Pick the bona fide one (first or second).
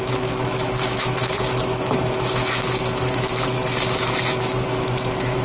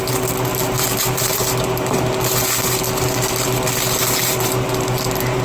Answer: second